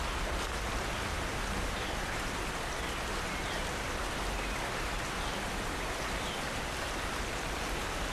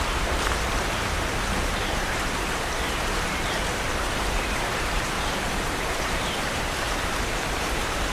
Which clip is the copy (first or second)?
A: second